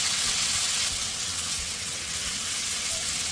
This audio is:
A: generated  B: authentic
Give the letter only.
A